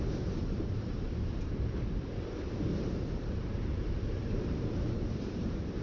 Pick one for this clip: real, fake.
fake